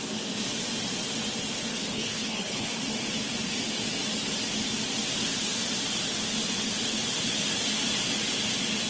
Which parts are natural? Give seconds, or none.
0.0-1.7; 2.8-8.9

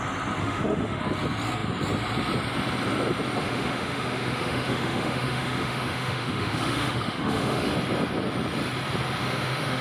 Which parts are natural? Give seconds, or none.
0.0-0.4; 1.0-3.4; 7.7-9.2

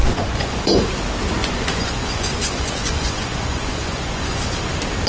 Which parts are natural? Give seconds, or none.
0.9-1.4; 4.5-5.1